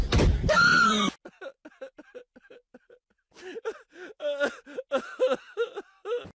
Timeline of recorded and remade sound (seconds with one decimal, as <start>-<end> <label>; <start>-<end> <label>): 0.0-6.4 recorded